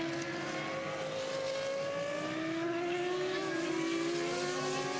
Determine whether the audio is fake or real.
real